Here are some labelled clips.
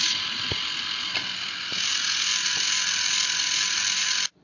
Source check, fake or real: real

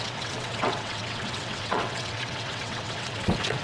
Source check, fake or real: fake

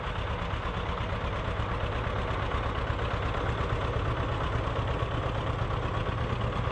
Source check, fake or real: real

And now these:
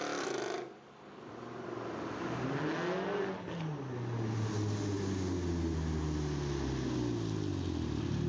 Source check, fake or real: real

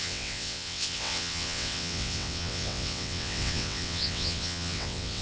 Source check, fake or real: fake